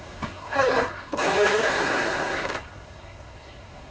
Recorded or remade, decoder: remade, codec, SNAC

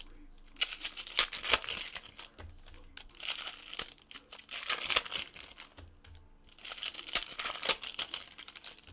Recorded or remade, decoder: recorded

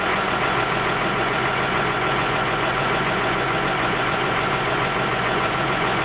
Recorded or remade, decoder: remade, vocoder, Vocos